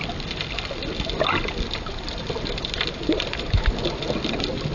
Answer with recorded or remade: recorded